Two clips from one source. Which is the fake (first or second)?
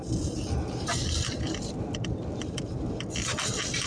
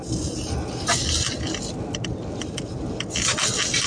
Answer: first